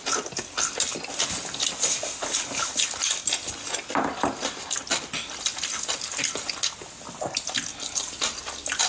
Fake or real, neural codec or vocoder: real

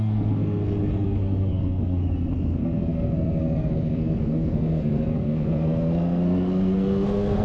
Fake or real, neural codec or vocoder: fake, codec, SNAC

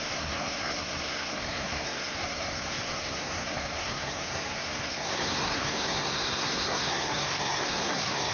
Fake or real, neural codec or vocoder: fake, codec, SNAC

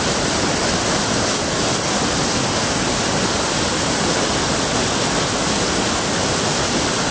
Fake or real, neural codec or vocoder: real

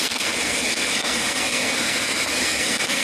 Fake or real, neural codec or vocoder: fake, codec, SNAC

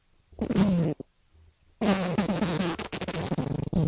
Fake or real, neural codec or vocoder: real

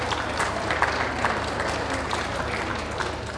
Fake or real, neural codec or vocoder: real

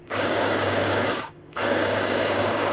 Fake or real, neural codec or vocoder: fake, codec, DAC